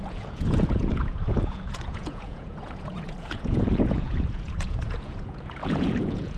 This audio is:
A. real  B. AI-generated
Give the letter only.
B